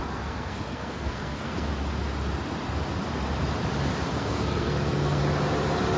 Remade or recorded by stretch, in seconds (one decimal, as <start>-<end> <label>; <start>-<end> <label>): 0.0-1.7 remade; 1.7-4.1 recorded; 4.1-5.2 remade; 5.2-6.0 recorded